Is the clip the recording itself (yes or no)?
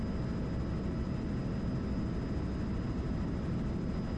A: yes